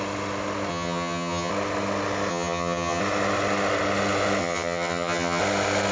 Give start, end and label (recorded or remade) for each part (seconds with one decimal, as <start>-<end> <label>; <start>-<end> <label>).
0.0-0.7 recorded; 0.7-1.5 remade; 1.5-2.3 recorded; 2.3-3.0 remade; 3.0-4.4 recorded; 4.4-5.4 remade; 5.4-5.9 recorded